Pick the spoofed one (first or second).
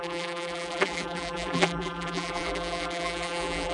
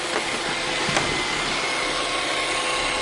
first